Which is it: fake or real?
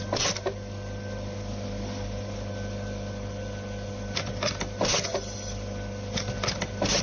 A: real